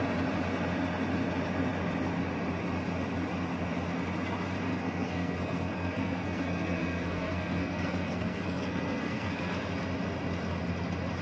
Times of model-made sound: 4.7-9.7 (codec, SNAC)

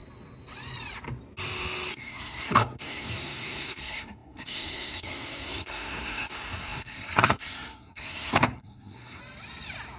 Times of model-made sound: 1.9-9.2 (codec, SNAC)

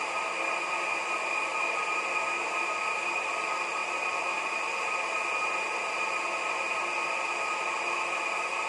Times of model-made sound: none

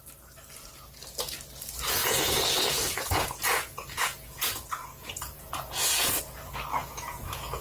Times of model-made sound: 2.0-6.2 (vocoder, Vocos); 6.8-7.6

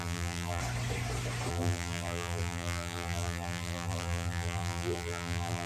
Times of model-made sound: 0.0-0.6 (vocoder, BigVGAN v2); 1.5-5.7

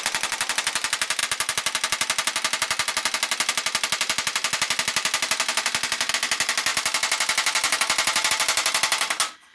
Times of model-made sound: none

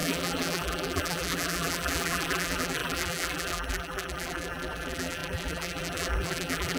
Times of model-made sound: 0.0-6.8 (vocoder, BigVGAN v2)